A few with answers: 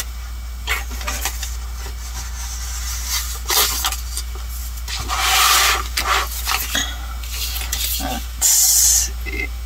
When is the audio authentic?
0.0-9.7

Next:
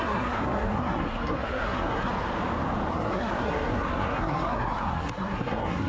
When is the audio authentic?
2.1-2.9